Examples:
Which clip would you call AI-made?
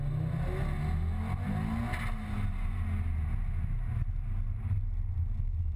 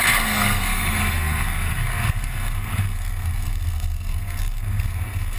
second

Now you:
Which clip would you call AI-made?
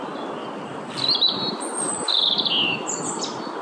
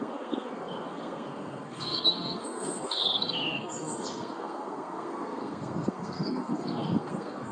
second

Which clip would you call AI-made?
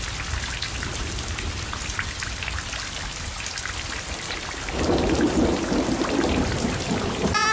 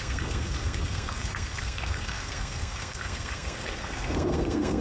second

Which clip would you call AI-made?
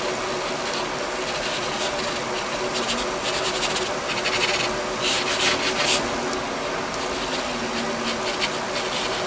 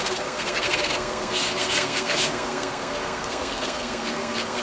second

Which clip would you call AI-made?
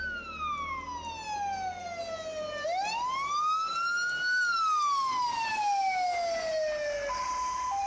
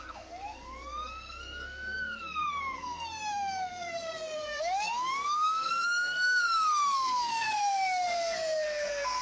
second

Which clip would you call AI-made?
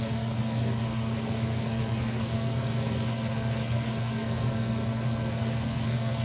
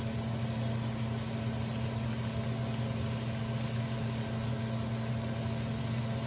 first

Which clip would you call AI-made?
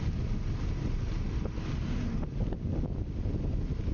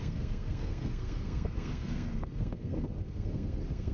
second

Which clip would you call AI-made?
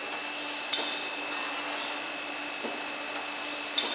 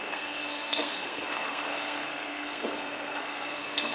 second